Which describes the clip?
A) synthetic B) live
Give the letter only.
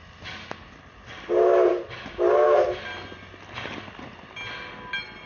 B